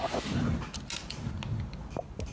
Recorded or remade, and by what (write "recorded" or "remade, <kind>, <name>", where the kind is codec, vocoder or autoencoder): recorded